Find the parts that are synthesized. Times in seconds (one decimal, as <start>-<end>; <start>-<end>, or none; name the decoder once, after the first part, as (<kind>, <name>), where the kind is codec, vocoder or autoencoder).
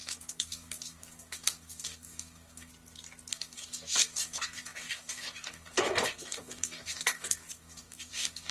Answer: 0.0-2.7 (codec, DAC); 3.3-8.5